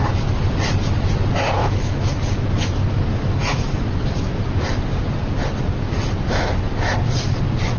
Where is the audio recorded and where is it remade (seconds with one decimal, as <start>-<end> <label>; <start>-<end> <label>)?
0.0-1.6 recorded; 1.6-2.2 remade; 2.2-7.8 recorded